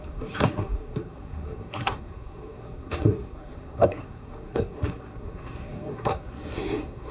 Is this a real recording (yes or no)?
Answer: no